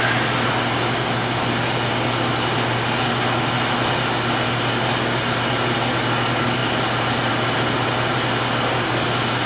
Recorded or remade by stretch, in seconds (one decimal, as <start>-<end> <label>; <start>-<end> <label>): 0.0-9.5 recorded